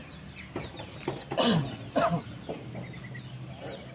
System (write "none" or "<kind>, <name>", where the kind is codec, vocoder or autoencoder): none